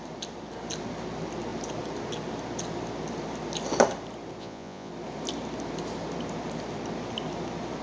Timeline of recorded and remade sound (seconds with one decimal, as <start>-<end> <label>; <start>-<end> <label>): 0.0-4.4 recorded; 4.4-4.9 remade; 4.9-7.8 recorded